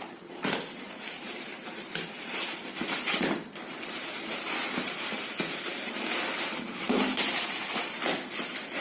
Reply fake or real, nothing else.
fake